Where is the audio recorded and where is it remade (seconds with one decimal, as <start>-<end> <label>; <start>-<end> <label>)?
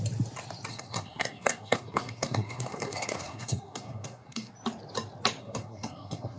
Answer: 0.0-0.7 recorded; 0.7-4.5 remade; 4.5-5.4 recorded; 5.4-6.4 remade